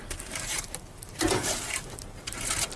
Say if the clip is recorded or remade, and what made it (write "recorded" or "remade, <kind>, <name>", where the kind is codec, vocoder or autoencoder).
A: remade, vocoder, BigVGAN v2